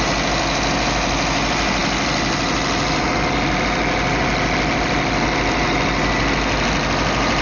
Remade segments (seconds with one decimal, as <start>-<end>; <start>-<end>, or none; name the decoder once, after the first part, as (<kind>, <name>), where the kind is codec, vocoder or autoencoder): none